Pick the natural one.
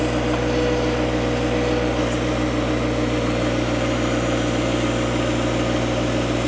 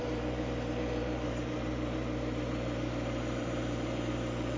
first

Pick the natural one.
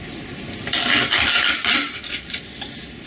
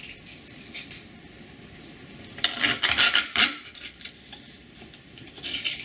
first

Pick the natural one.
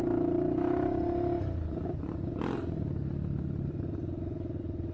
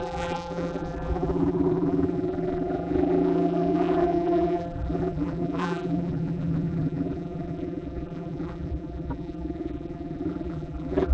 first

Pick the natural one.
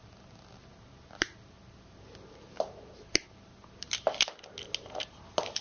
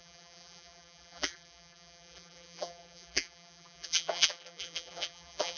first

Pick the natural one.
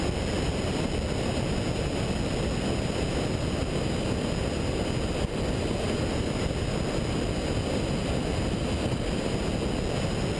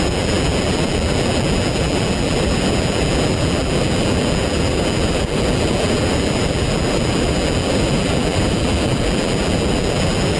first